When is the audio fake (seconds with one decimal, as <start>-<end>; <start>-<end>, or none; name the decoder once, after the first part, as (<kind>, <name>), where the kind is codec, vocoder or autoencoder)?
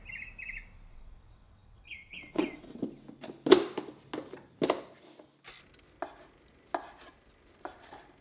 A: 0.9-2.8 (vocoder, WaveNeXt)